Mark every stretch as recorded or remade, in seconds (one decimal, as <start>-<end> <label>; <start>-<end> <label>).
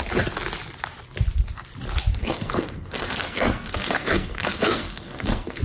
0.0-2.1 recorded; 2.1-5.6 remade